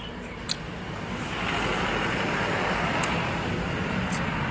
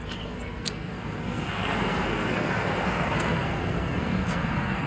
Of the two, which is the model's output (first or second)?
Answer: second